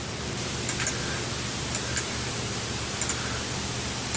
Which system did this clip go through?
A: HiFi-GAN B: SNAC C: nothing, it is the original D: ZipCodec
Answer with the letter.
C